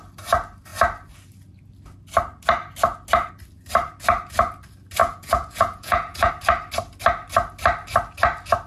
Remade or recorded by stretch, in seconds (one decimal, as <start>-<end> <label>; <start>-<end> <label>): 0.0-5.0 recorded; 5.0-6.3 remade; 6.3-8.7 recorded

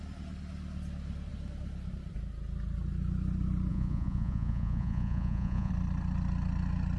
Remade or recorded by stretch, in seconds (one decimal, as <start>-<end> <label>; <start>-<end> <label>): 0.0-3.7 recorded; 3.7-5.7 remade; 5.7-7.0 recorded

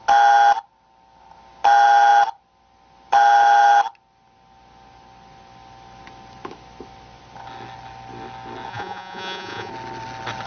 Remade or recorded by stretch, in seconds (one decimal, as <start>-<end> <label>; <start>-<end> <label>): 0.0-8.7 recorded; 8.7-9.7 remade; 9.7-10.5 recorded

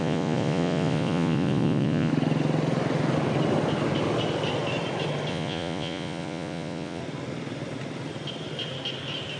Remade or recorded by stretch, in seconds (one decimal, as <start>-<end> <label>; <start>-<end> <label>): 0.0-2.1 remade; 2.1-5.3 recorded; 5.3-7.0 remade; 7.0-9.4 recorded